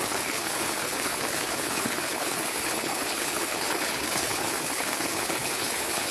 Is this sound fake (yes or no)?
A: yes